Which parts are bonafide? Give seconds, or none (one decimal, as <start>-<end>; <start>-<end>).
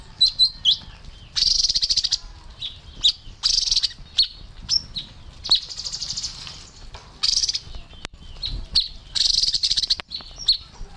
0.0-6.0; 6.6-11.0